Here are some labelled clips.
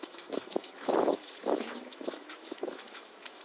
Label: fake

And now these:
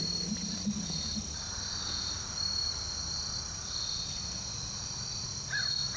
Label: real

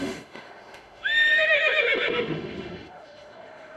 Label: fake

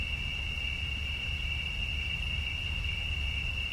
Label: real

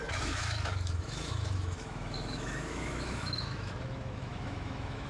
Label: fake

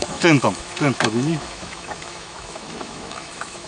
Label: fake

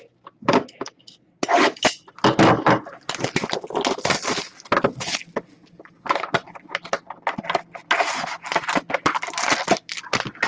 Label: real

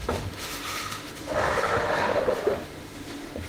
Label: fake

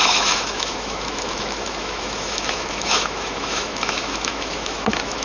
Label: fake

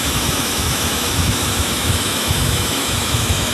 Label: fake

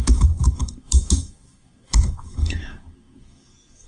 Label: fake